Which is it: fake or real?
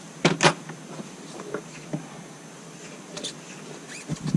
real